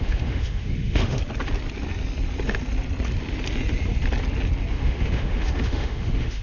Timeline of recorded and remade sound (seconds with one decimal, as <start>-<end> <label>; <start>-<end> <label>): 0.0-1.2 remade; 1.2-4.7 recorded; 4.7-6.4 remade